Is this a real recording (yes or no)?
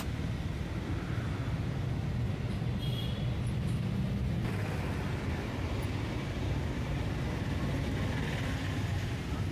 yes